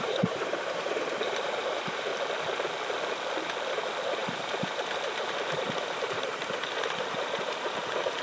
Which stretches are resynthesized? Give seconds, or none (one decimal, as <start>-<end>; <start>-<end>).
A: 0.0-2.1; 3.7-8.2